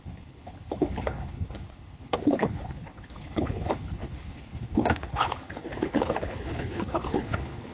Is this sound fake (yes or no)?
yes